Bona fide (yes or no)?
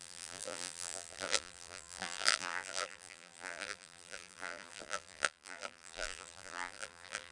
no